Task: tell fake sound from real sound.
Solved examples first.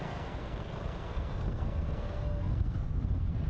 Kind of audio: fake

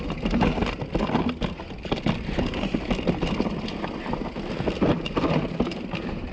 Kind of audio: real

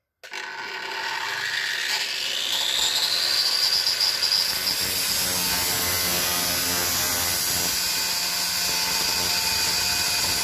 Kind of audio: real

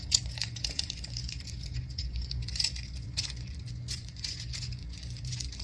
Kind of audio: fake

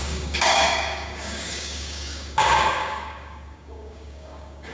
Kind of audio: fake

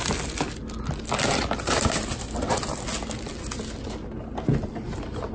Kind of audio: real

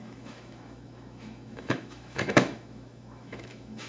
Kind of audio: fake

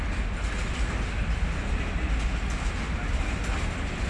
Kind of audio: real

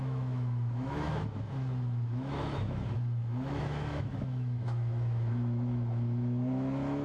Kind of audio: fake